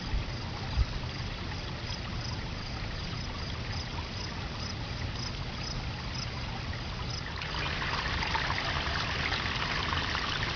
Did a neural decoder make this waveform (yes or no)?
no